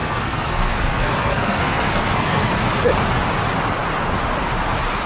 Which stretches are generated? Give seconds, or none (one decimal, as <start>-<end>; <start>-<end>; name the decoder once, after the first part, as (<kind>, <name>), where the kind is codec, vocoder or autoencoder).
0.0-2.5 (codec, SNAC)